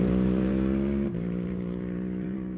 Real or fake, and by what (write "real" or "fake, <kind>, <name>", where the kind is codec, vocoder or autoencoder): fake, vocoder, BigVGAN v2